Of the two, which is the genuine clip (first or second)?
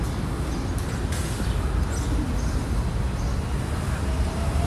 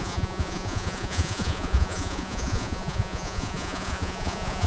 first